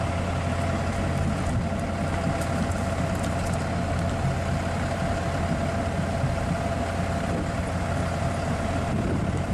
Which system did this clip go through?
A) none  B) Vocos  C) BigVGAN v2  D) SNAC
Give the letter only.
A